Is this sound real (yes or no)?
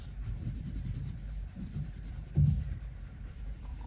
no